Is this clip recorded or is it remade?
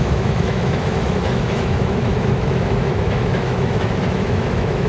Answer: remade